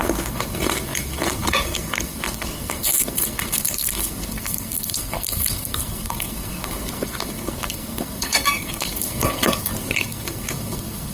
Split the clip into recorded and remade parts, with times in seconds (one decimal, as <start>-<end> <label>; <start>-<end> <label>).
0.0-11.1 remade